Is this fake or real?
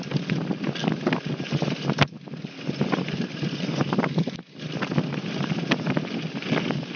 real